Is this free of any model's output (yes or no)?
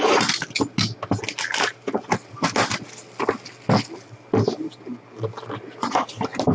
yes